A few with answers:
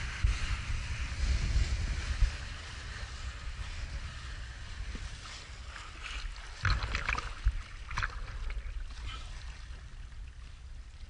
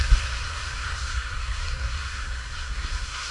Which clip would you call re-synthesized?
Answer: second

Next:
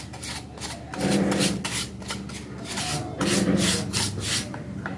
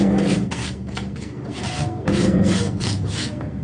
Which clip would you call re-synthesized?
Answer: second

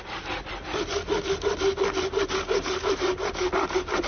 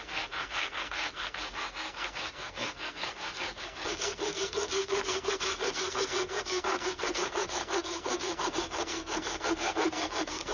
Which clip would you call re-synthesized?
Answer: second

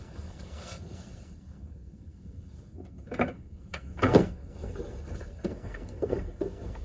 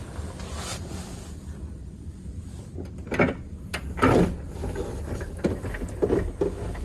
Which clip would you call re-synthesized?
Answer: first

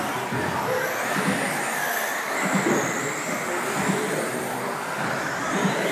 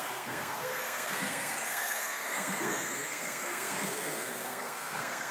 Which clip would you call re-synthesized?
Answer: second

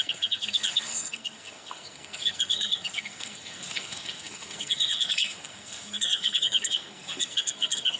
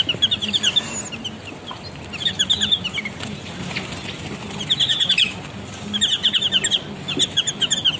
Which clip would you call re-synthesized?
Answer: first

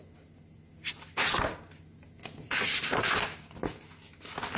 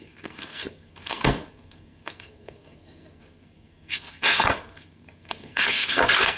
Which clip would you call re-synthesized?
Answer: second